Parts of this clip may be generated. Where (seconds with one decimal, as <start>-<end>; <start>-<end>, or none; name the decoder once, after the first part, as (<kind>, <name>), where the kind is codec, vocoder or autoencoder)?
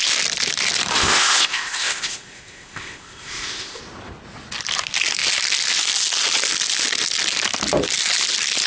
0.9-3.8 (codec, ZipCodec)